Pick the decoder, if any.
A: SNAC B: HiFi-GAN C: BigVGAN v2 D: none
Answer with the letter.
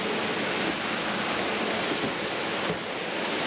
D